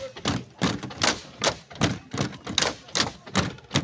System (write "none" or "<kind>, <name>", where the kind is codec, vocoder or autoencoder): none